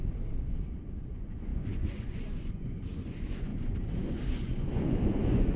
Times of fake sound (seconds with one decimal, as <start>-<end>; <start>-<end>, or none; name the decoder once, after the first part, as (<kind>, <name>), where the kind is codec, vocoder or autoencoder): 1.1-5.6 (vocoder, Vocos)